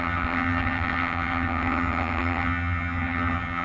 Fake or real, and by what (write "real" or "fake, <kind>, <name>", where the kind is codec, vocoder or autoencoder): fake, vocoder, HiFi-GAN